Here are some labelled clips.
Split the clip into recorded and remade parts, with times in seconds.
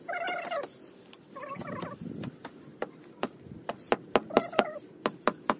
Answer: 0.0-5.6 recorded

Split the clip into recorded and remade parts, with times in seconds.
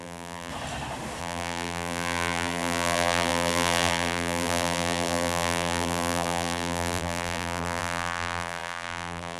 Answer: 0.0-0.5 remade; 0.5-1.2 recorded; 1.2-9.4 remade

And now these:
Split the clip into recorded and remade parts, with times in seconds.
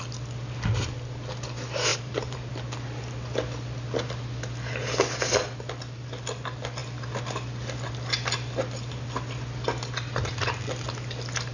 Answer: 0.0-1.9 recorded; 1.9-2.5 remade; 2.5-11.5 recorded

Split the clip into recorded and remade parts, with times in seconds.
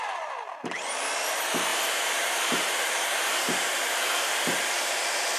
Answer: 0.0-1.7 recorded; 1.7-4.9 remade; 4.9-5.4 recorded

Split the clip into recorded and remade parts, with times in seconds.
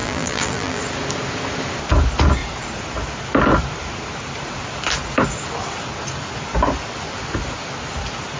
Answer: 0.0-0.8 remade; 0.8-8.4 recorded